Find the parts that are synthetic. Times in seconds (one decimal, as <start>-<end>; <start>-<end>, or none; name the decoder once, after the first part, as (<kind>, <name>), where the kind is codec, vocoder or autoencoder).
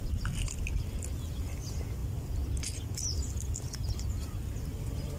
none